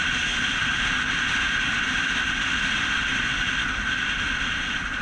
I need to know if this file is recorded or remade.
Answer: recorded